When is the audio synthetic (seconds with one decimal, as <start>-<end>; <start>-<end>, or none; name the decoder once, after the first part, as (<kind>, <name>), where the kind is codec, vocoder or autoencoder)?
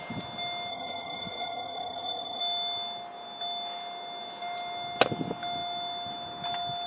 0.7-2.4 (vocoder, HiFi-GAN)